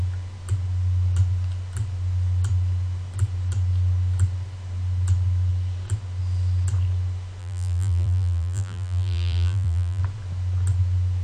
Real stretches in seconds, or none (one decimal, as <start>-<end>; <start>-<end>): 0.0-7.4; 10.0-11.2